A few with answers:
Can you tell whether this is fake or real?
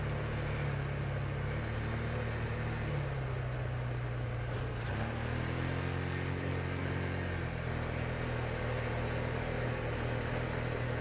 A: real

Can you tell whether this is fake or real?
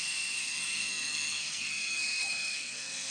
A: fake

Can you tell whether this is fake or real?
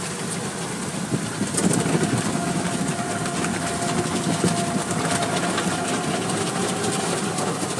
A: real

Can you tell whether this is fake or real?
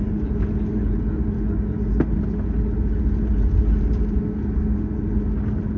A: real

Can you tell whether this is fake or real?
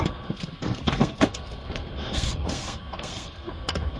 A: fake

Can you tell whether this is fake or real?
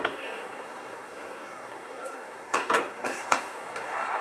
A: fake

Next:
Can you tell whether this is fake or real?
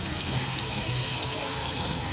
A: fake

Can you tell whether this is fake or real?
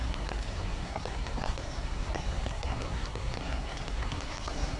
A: fake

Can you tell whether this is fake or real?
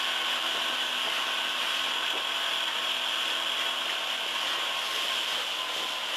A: real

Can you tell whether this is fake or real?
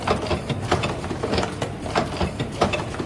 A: real